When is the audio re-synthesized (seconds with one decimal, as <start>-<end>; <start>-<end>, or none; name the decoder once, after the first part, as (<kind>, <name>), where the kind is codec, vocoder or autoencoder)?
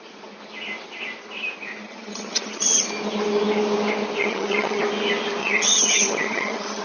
1.9-2.8 (vocoder, HiFi-GAN); 4.2-4.8; 5.4-6.8